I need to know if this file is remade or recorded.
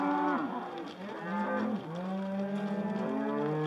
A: recorded